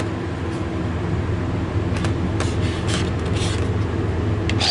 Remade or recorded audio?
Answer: recorded